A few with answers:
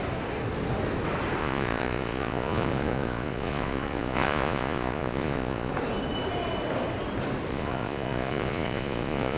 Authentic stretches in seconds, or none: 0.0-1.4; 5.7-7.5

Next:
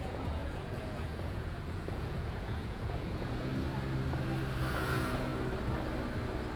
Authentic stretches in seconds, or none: 3.5-4.7; 5.3-6.6